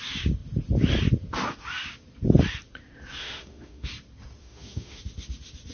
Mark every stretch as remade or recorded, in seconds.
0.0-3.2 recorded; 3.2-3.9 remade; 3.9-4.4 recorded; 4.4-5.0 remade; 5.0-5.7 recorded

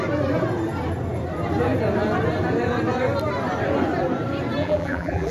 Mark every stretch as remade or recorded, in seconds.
0.0-4.6 recorded; 4.6-5.3 remade

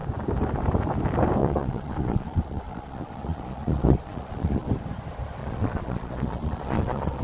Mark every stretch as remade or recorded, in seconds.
0.0-1.4 recorded; 1.4-4.7 remade; 4.7-5.4 recorded; 5.4-7.2 remade